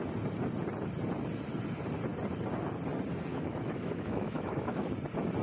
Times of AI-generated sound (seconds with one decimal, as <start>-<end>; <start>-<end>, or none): 3.3-4.9